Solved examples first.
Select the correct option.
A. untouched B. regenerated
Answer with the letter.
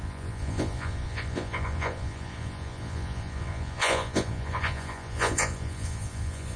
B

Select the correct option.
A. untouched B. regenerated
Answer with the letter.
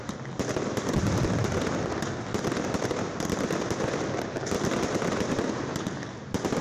A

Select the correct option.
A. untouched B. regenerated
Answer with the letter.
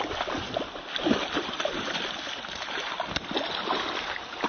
A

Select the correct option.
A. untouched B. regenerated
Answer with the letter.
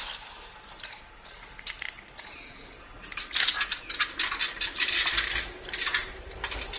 A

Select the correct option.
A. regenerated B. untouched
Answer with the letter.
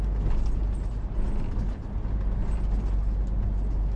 B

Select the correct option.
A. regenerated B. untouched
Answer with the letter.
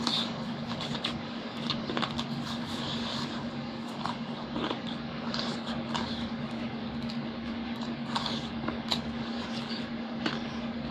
A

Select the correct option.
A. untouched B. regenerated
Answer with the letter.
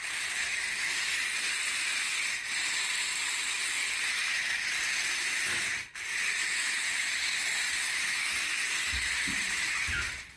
A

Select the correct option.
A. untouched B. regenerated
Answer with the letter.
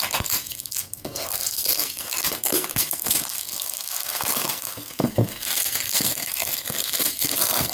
B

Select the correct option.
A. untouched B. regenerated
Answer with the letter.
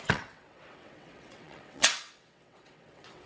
B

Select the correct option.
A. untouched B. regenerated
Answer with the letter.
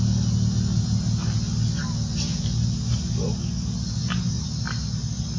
A